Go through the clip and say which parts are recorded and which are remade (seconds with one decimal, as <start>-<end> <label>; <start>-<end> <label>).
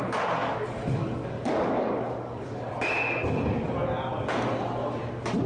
0.0-0.4 recorded; 0.4-2.7 remade; 2.7-5.5 recorded